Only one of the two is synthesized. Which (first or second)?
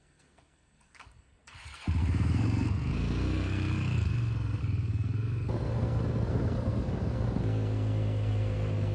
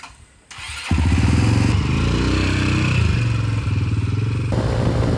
first